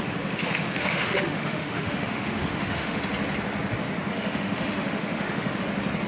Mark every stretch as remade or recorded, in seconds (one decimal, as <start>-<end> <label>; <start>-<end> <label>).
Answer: 0.0-0.4 recorded; 0.4-3.0 remade; 3.0-4.1 recorded; 4.1-5.6 remade; 5.6-6.1 recorded